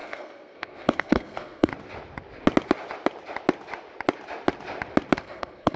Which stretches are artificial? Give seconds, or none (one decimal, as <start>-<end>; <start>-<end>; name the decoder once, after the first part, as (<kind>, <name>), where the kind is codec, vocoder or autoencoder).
0.0-1.7 (codec, SNAC); 5.2-5.8

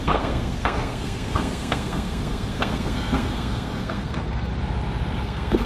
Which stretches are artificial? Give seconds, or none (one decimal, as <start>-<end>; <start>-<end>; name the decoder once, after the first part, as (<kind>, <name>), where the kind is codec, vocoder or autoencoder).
0.0-4.5 (codec, SNAC); 5.2-5.7